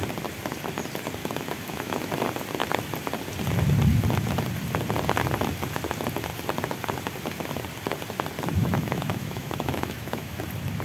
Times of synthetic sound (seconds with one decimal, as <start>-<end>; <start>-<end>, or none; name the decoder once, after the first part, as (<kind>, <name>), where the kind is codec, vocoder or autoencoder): 1.2-2.1 (autoencoder, DAC-VAE); 8.6-10.4